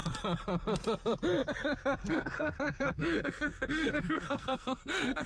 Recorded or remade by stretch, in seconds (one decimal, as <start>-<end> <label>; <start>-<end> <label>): 0.0-2.1 recorded; 2.1-5.3 remade